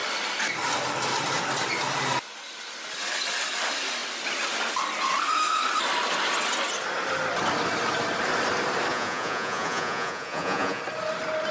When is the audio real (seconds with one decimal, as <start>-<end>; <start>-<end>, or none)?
0.0-8.9; 10.8-11.5